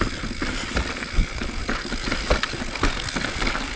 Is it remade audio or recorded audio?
remade